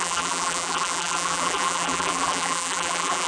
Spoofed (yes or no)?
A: yes